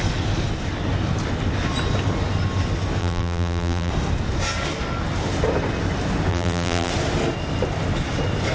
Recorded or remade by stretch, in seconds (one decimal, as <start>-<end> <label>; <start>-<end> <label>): 0.0-3.0 recorded; 3.0-3.9 remade; 3.9-6.3 recorded; 6.3-6.9 remade; 6.9-8.5 recorded